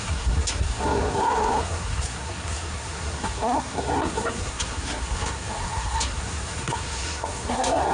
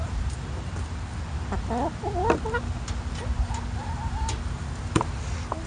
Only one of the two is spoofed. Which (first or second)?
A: first